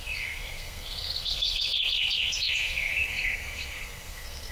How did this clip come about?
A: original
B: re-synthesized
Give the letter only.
B